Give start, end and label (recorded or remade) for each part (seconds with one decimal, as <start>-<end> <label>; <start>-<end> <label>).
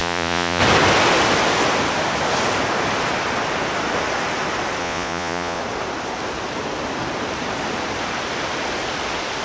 0.0-0.6 remade; 0.6-4.8 recorded; 4.8-5.6 remade; 5.6-9.4 recorded